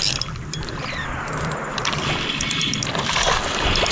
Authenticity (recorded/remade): remade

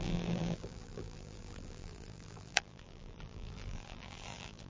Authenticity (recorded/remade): remade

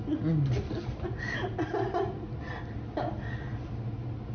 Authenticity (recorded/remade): recorded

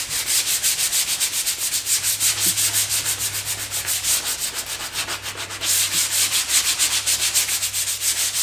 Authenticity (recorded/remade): recorded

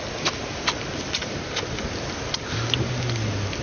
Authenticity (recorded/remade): recorded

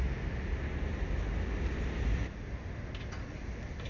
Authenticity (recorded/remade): recorded